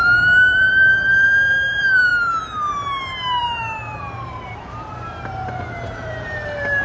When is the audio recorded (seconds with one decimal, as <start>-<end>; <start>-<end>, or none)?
none